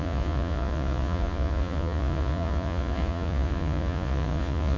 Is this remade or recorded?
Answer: remade